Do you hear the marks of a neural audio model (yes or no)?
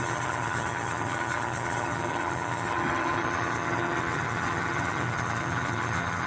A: yes